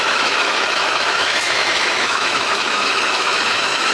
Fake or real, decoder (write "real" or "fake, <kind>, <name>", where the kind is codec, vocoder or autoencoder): fake, autoencoder, DAC-VAE